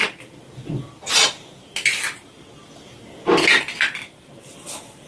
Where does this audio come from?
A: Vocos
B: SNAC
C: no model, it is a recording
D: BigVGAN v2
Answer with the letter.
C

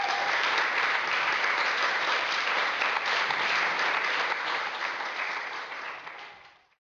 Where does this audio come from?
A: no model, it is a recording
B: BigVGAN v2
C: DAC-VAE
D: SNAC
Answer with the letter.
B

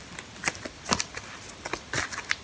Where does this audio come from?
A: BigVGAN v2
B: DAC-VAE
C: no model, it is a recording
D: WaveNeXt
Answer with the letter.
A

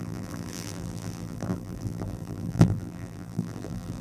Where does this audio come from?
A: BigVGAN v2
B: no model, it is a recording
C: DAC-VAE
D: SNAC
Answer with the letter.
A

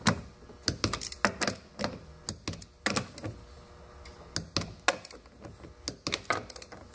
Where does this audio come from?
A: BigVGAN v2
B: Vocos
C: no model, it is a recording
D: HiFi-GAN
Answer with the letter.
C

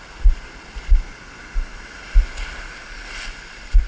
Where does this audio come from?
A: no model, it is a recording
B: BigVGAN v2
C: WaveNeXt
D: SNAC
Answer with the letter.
A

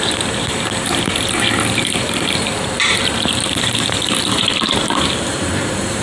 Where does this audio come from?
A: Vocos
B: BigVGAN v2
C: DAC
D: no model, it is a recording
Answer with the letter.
B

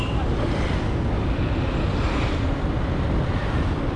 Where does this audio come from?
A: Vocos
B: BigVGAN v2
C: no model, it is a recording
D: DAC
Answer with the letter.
C